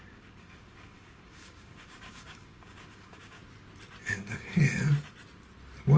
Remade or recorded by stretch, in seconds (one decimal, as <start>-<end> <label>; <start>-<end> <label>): 0.0-3.4 remade; 3.4-4.1 recorded; 4.1-4.5 remade; 4.5-6.0 recorded